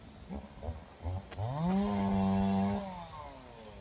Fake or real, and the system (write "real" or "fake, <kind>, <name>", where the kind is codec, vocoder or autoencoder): real